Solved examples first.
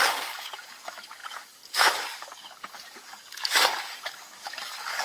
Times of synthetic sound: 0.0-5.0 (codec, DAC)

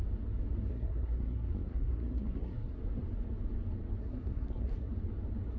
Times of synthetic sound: 0.7-2.8 (codec, SNAC); 4.0-4.9

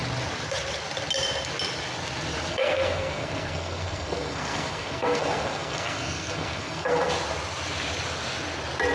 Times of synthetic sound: 2.5-7.1 (codec, SNAC)

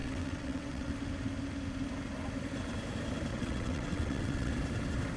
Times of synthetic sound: 0.0-0.9 (vocoder, WaveNeXt); 3.3-4.5

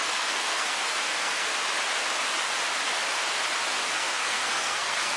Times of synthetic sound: 0.0-1.5 (codec, SNAC); 3.9-5.2